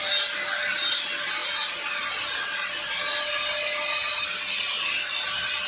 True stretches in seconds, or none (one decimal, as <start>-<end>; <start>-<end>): 0.0-5.7